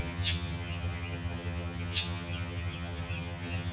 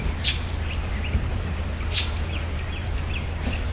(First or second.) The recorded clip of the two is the second